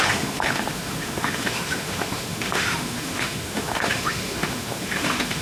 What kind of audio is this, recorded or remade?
remade